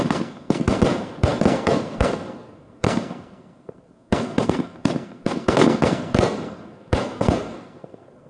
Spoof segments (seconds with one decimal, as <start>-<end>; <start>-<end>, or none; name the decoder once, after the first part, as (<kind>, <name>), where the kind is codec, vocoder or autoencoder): 0.0-8.3 (codec, SNAC)